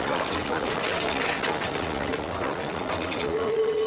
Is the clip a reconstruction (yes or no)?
yes